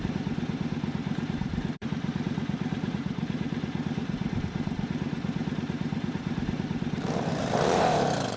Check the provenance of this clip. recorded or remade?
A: remade